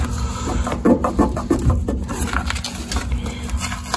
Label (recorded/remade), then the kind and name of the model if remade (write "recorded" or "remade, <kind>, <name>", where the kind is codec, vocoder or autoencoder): recorded